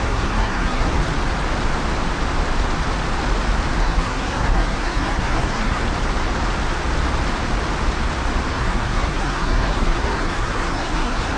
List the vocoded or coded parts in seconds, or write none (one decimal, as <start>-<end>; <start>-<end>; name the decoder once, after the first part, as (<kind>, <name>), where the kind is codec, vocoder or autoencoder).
0.0-1.0 (codec, SNAC); 3.8-5.8; 8.5-11.4